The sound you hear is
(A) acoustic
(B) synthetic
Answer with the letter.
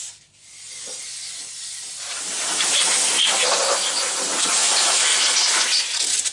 A